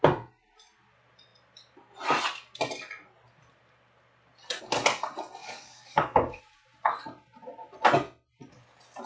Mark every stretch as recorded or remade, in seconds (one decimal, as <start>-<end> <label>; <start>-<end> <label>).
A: 0.0-5.4 recorded; 5.4-6.4 remade; 6.4-9.1 recorded